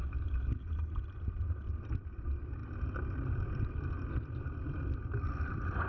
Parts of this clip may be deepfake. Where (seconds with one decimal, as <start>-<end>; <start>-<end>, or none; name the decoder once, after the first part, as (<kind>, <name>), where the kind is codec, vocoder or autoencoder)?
none